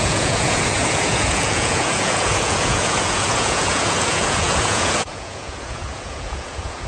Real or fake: fake